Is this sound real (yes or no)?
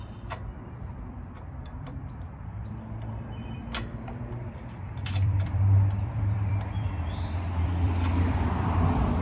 no